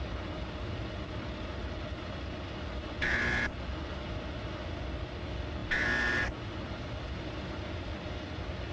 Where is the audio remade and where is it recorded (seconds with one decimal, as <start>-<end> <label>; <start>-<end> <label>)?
0.0-8.7 recorded